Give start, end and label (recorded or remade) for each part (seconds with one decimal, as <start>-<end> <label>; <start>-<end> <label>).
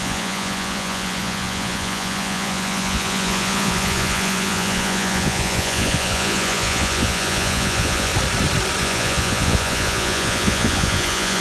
0.0-8.1 remade; 8.1-8.8 recorded; 8.8-11.4 remade